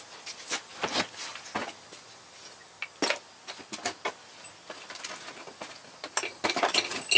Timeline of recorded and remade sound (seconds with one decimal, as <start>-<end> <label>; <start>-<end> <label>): 0.0-7.2 recorded